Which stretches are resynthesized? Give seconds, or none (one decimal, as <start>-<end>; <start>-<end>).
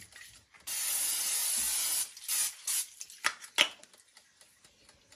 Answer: none